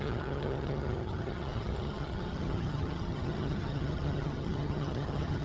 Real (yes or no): no